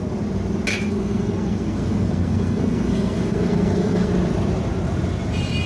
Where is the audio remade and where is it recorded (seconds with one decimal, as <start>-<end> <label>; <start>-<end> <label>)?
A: 0.0-0.7 recorded; 0.7-4.1 remade; 4.1-5.7 recorded